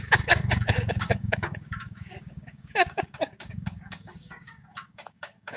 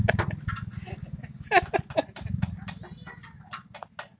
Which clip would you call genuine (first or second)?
second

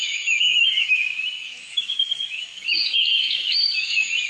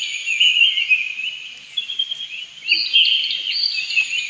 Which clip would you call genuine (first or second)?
second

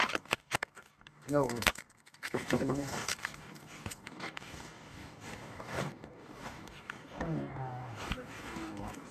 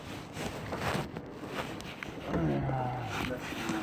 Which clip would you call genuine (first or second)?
second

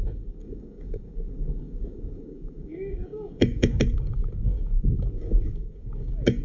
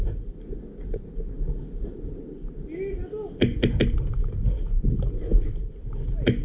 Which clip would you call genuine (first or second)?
second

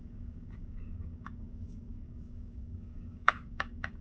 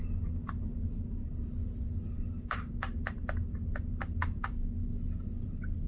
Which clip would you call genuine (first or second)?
second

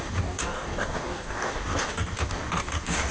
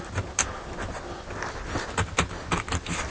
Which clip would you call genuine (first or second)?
second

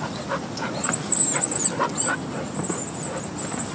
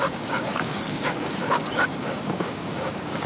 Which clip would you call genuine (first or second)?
first